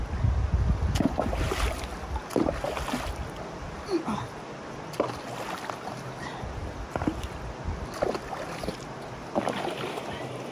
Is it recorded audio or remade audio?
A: recorded